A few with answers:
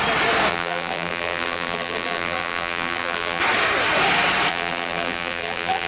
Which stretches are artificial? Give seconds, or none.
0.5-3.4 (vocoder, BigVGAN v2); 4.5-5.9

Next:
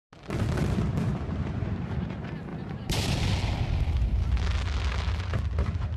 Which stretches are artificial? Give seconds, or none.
1.1-1.9 (vocoder, BigVGAN v2); 2.5-3.2

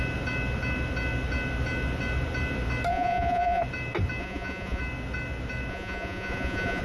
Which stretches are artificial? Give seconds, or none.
2.9-3.6 (vocoder, Vocos); 4.2-4.8; 5.7-6.8

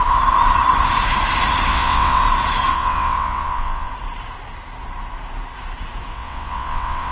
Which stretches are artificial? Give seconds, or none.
1.7-2.2 (vocoder, WaveNeXt); 2.7-3.9; 6.1-7.1

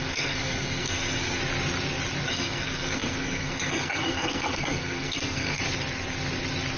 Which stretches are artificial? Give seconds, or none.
0.0-1.4 (codec, SNAC); 2.3-5.6

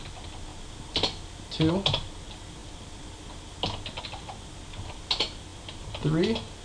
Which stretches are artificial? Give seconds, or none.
none